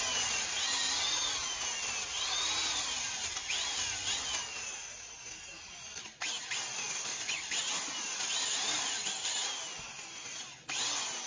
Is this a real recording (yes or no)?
yes